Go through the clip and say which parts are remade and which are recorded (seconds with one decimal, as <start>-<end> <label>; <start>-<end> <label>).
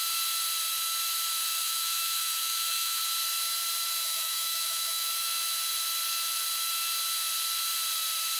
0.0-1.6 recorded; 1.6-3.0 remade; 3.0-4.0 recorded; 4.0-5.1 remade; 5.1-8.4 recorded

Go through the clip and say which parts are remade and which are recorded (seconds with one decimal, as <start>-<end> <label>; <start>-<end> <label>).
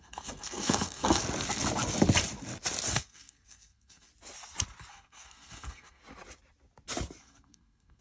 0.0-1.2 remade; 1.2-2.9 recorded; 2.9-4.1 remade; 4.1-4.9 recorded; 4.9-6.0 remade; 6.0-7.2 recorded; 7.2-8.0 remade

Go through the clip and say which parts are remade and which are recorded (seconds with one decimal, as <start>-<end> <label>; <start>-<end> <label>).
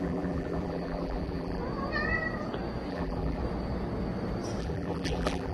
0.0-1.6 remade; 1.6-2.9 recorded; 2.9-3.4 remade; 3.4-4.6 recorded; 4.6-5.5 remade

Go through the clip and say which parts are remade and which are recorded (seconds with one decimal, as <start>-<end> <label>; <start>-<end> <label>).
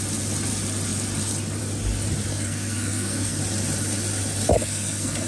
0.0-2.3 recorded; 2.3-3.4 remade; 3.4-4.5 recorded; 4.5-5.3 remade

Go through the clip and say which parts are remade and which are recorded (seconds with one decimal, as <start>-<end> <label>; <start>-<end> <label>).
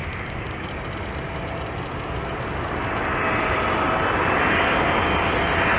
0.0-0.7 remade; 0.7-5.8 recorded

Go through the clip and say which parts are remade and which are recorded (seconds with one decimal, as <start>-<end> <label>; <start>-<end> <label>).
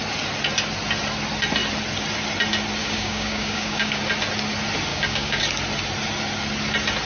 0.0-2.8 recorded; 2.8-4.0 remade; 4.0-4.9 recorded; 4.9-5.4 remade; 5.4-7.1 recorded